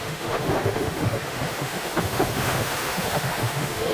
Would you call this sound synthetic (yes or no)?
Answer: yes